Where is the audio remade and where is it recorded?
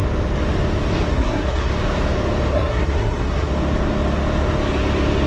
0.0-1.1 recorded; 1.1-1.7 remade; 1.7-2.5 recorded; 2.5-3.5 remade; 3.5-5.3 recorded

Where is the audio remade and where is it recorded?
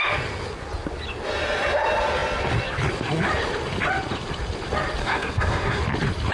0.0-5.0 recorded; 5.0-5.8 remade; 5.8-6.3 recorded